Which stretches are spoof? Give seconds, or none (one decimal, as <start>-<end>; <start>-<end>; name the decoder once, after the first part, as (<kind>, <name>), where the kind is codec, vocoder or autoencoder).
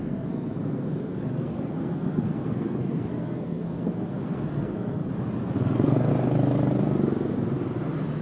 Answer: 0.0-5.1 (codec, SNAC); 5.6-6.1